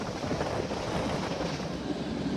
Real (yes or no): yes